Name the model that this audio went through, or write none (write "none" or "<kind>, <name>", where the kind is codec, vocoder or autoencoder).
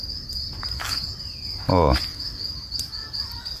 none